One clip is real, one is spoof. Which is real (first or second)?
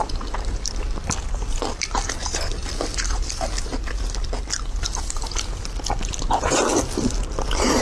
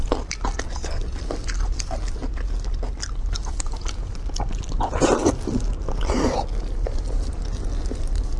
second